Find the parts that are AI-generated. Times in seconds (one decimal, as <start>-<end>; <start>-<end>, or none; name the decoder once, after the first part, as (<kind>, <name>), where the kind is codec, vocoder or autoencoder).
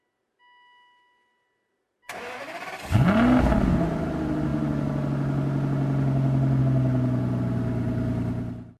none